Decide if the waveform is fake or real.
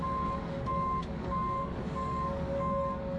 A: fake